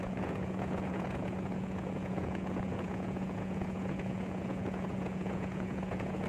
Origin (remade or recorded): remade